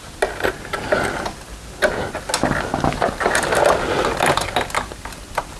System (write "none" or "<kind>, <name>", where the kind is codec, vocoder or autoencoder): none